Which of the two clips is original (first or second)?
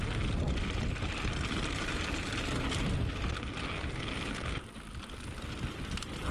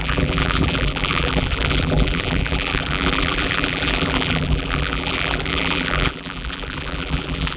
first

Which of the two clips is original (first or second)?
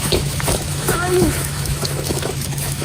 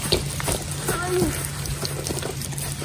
second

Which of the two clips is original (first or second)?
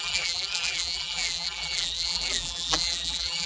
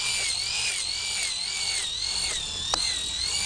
second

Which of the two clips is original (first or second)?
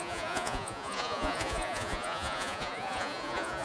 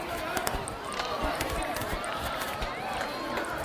second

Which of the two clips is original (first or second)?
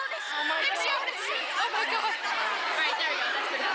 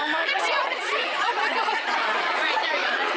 first